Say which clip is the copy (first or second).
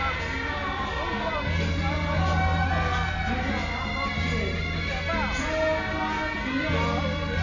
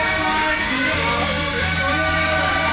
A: second